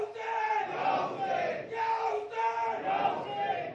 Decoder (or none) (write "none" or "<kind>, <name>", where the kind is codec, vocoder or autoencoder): none